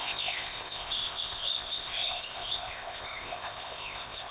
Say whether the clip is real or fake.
fake